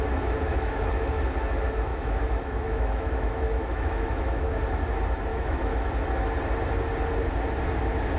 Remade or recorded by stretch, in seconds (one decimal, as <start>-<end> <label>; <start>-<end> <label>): 0.0-0.5 recorded; 0.5-1.2 remade; 1.2-1.9 recorded; 1.9-4.4 remade; 4.4-5.3 recorded; 5.3-5.9 remade; 5.9-8.2 recorded